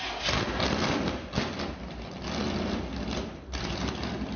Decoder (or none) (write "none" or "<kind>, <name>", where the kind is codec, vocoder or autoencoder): none